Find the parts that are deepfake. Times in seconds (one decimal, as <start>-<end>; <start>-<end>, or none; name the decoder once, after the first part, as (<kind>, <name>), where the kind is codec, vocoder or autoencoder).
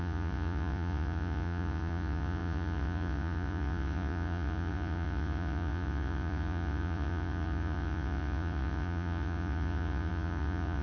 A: 0.0-10.8 (vocoder, Vocos)